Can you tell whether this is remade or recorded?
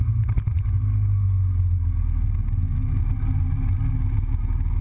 recorded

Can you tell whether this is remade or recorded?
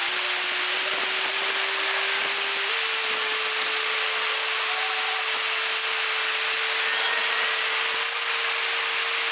recorded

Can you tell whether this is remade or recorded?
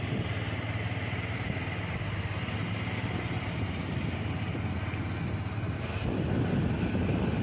recorded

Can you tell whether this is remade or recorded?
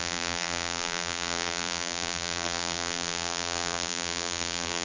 remade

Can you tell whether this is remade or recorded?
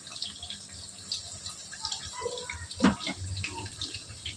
recorded